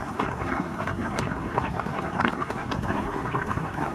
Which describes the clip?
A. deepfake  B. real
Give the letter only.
A